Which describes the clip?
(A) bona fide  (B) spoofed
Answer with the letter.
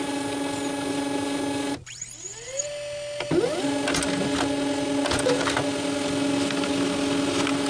A